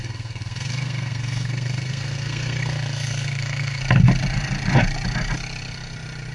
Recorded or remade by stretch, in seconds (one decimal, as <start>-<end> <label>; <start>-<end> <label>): 0.0-3.8 remade; 3.8-6.3 recorded